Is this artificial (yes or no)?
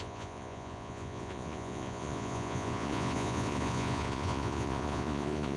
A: yes